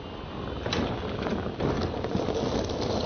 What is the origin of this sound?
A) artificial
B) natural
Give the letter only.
B